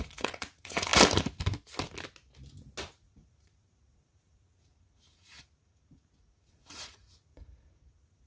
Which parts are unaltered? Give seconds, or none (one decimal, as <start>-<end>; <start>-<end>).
0.9-2.9